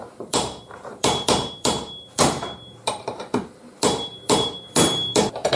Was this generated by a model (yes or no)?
yes